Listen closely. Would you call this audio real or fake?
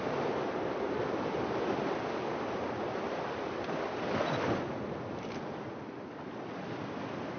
real